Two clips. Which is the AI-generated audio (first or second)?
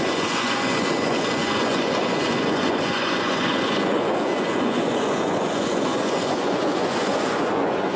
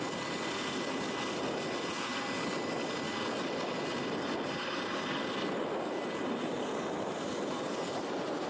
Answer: first